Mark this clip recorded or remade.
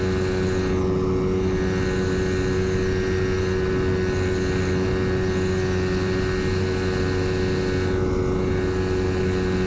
recorded